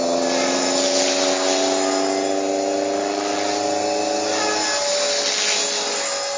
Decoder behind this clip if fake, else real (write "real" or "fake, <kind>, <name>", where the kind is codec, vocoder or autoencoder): real